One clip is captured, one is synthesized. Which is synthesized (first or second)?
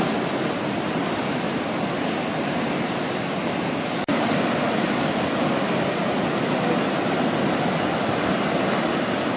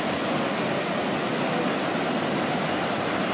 first